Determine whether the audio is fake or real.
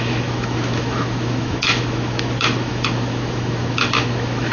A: fake